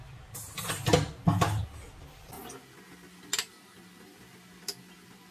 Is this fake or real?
real